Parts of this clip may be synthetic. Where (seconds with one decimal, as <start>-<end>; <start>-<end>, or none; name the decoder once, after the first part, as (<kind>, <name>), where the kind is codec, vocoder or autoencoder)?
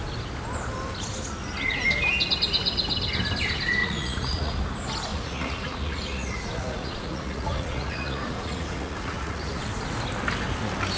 3.8-4.6 (vocoder, Vocos); 5.1-9.6